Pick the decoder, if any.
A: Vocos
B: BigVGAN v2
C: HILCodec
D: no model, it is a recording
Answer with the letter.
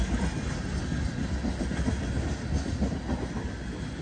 D